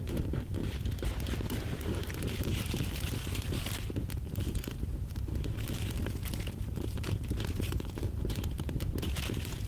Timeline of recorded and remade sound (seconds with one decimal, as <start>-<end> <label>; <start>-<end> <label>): 0.0-9.7 remade